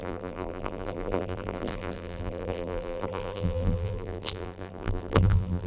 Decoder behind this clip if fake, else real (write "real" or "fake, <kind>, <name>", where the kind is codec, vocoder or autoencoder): fake, vocoder, BigVGAN v2